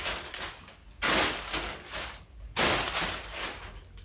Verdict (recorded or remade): recorded